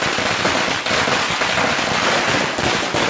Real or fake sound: real